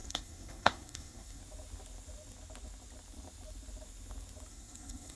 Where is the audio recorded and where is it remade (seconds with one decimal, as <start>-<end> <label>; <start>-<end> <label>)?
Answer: 0.0-1.4 remade; 1.4-4.5 recorded; 4.5-5.2 remade